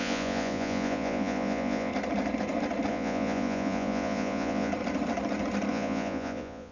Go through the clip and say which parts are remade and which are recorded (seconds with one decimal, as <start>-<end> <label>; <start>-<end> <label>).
0.0-1.9 remade; 1.9-2.9 recorded; 2.9-4.7 remade; 4.7-5.7 recorded; 5.7-6.7 remade